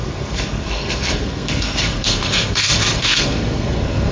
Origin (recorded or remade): remade